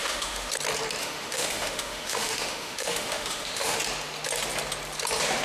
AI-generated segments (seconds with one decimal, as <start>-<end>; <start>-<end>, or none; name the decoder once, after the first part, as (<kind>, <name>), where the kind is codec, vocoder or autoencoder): 0.0-0.5 (autoencoder, DAC-VAE); 1.0-3.8